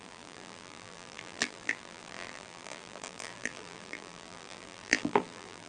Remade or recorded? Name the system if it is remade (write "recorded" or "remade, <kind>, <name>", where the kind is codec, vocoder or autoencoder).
remade, vocoder, BigVGAN v2